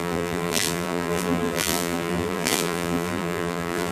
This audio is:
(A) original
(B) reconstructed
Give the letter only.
B